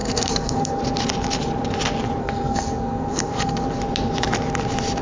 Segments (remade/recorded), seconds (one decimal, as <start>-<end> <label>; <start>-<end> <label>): 0.0-0.8 remade; 0.8-2.2 recorded; 2.2-3.8 remade; 3.8-5.0 recorded